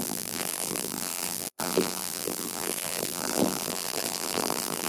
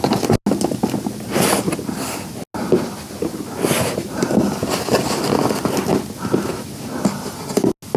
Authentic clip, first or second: second